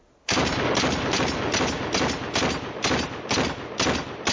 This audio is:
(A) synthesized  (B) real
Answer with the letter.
B